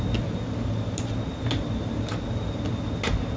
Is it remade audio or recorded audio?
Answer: recorded